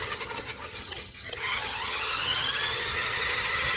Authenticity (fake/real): fake